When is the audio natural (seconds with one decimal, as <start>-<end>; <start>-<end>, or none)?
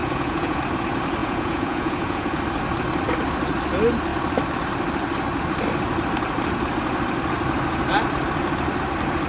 0.6-1.2; 2.4-9.3